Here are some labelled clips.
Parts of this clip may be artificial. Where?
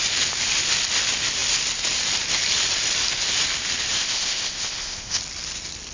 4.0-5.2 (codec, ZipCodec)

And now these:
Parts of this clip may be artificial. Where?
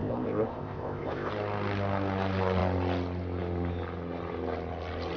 0.0-1.3 (codec, ZipCodec)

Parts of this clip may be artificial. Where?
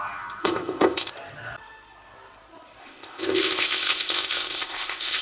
0.4-1.1 (codec, ZipCodec); 2.8-5.2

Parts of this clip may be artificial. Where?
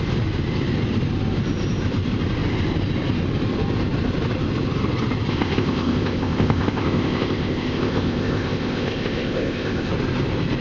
5.3-9.9 (codec, ZipCodec)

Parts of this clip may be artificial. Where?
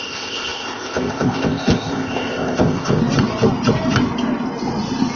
0.0-3.0 (codec, ZipCodec)